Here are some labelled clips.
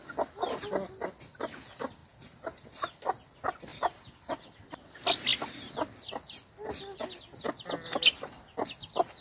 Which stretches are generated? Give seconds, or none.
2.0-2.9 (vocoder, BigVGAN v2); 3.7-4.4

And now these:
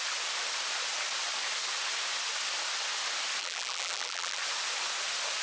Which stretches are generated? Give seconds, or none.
3.4-4.4 (vocoder, BigVGAN v2)